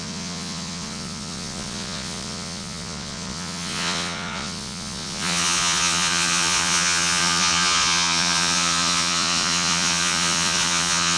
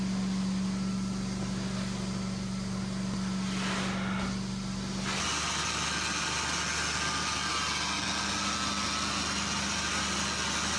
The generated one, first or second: first